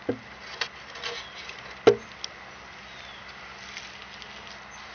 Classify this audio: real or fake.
real